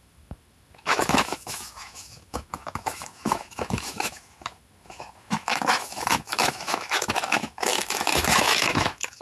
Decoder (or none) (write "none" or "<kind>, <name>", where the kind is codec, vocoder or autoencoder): autoencoder, DAC-VAE